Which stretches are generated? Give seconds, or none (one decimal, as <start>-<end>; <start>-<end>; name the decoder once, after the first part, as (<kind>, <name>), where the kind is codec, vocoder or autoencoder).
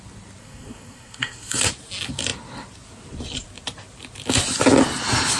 0.4-1.7 (codec, SNAC)